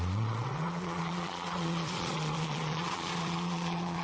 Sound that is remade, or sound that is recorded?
remade